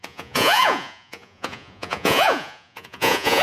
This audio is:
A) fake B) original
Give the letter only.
A